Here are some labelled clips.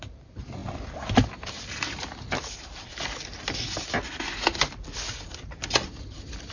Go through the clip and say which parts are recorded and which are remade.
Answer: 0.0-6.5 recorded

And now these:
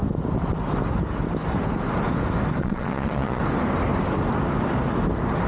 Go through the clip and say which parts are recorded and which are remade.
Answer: 0.0-2.6 recorded; 2.6-3.4 remade; 3.4-5.5 recorded

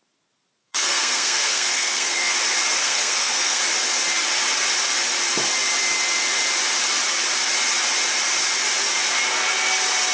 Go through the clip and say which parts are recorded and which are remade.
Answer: 0.0-0.6 recorded; 0.6-2.3 remade; 2.3-2.8 recorded; 2.8-3.6 remade; 3.6-10.1 recorded

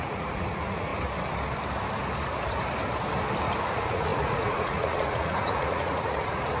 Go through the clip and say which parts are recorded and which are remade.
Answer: 0.0-0.9 remade; 0.9-3.6 recorded; 3.6-6.6 remade

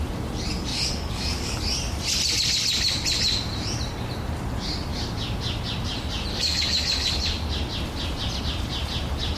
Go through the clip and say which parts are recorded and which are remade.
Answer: 0.0-0.7 recorded; 0.7-1.6 remade; 1.6-6.3 recorded; 6.3-7.2 remade; 7.2-9.4 recorded